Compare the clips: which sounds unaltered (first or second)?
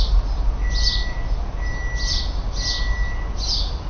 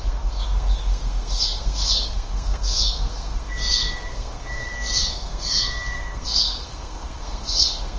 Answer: first